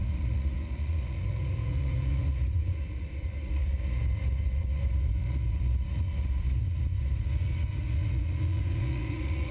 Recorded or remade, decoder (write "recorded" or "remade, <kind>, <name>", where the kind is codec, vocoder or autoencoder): remade, vocoder, Vocos